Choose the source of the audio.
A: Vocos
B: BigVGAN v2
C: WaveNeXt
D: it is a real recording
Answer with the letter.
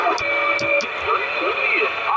D